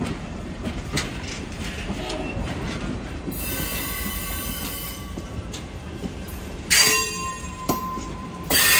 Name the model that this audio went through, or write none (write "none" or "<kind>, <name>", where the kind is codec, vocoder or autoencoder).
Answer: vocoder, BigVGAN v2